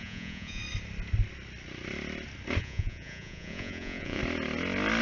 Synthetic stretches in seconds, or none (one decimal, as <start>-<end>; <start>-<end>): 0.0-0.6; 2.6-4.2